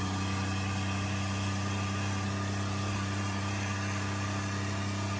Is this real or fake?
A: real